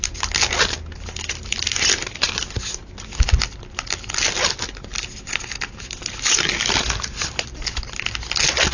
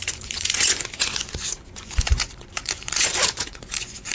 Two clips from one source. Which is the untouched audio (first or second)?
first